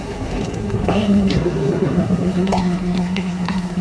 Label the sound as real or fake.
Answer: fake